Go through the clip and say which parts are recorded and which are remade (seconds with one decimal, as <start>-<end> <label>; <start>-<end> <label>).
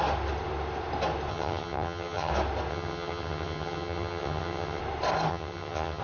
0.0-1.3 recorded; 1.3-2.3 remade; 2.3-2.7 recorded; 2.7-4.8 remade; 4.8-5.3 recorded; 5.3-6.0 remade